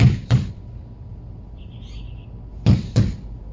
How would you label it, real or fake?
real